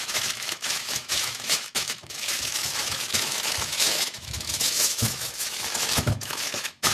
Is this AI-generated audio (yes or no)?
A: yes